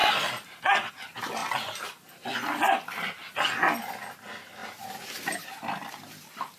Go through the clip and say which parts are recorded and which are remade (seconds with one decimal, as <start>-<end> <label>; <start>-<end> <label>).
0.0-0.9 remade; 0.9-6.6 recorded